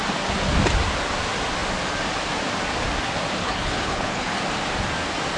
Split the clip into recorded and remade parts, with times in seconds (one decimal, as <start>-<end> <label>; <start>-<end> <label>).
0.0-3.4 recorded; 3.4-4.4 remade; 4.4-5.4 recorded